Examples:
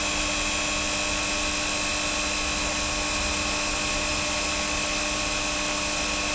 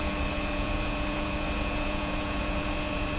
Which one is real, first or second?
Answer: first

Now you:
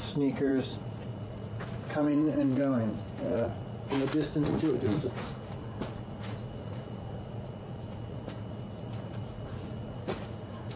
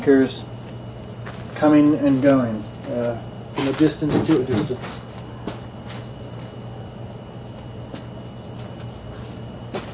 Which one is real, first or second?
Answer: second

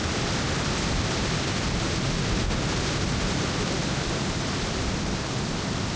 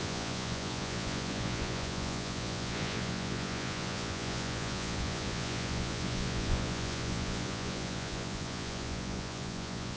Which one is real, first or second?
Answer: first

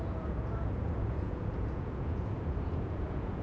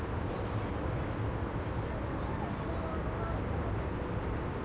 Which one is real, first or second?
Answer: second